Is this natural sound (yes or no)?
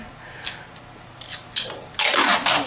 yes